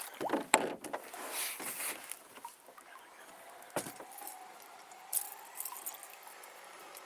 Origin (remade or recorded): recorded